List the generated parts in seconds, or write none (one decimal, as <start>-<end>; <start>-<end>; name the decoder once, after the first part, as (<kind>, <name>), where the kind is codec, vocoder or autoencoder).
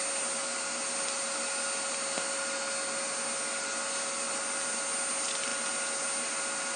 none